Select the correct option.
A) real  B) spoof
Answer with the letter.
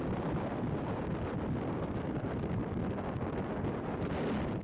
A